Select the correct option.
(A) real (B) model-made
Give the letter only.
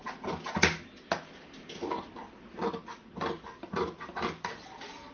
A